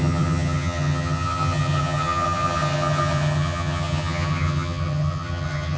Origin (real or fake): fake